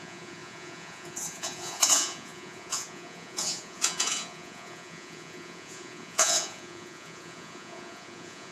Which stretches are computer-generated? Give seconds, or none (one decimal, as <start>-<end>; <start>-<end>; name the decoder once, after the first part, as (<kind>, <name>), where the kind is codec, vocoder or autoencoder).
0.0-8.5 (vocoder, Vocos)